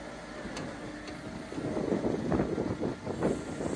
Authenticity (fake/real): real